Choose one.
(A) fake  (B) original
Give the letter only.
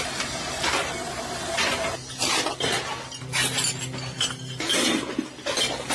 B